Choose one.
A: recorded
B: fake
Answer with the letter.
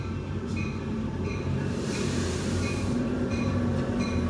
B